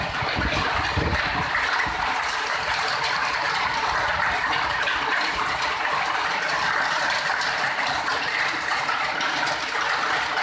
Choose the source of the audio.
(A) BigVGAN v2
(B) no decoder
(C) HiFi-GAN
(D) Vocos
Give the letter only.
B